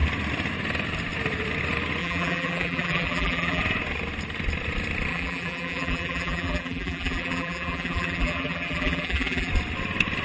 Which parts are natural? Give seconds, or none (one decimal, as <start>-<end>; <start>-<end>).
0.0-2.0; 3.6-5.1; 9.5-10.2